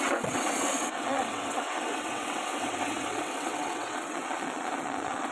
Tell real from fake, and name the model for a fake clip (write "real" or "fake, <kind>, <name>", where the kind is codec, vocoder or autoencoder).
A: fake, vocoder, WaveNeXt